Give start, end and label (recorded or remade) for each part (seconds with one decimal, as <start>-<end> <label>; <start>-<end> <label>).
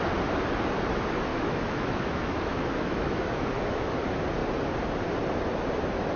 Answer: 0.0-1.3 recorded; 1.3-4.0 remade; 4.0-6.2 recorded